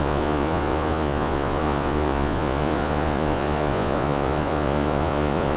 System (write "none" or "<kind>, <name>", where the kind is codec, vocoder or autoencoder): vocoder, Vocos